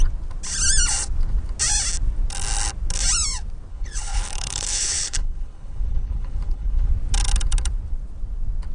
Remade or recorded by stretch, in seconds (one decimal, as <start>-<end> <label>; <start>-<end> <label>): 0.0-3.7 recorded; 3.7-6.9 remade; 6.9-8.7 recorded

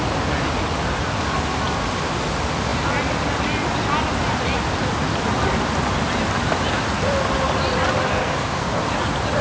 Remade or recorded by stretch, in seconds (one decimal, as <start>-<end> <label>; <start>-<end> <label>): 0.0-8.2 recorded; 8.2-8.8 remade; 8.8-9.4 recorded

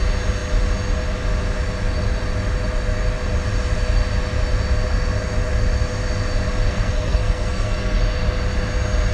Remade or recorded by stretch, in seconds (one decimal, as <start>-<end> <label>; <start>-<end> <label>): 0.0-6.7 recorded; 6.7-8.0 remade; 8.0-9.1 recorded

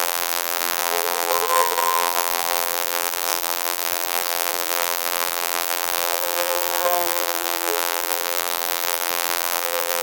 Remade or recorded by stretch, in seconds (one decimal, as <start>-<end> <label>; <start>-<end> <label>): 0.0-10.0 remade

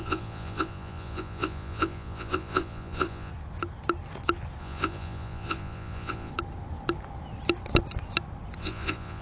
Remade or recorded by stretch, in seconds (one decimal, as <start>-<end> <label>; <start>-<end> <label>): 0.0-3.3 remade; 3.3-4.6 recorded; 4.6-6.3 remade; 6.3-8.6 recorded; 8.6-9.2 remade

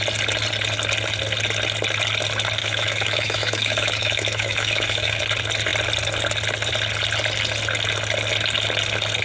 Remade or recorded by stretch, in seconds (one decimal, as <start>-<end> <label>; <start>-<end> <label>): 0.0-2.6 recorded; 2.6-5.2 remade; 5.2-9.2 recorded

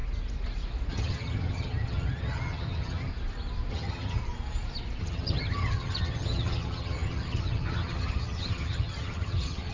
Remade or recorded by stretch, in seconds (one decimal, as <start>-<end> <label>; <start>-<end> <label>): 0.0-0.9 recorded; 0.9-3.1 remade; 3.1-3.7 recorded; 3.7-4.2 remade; 4.2-5.0 recorded; 5.0-9.7 remade